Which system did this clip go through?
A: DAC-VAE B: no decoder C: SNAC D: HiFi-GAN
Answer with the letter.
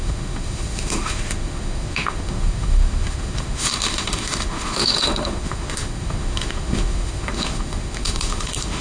A